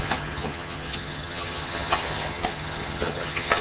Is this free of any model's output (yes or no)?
no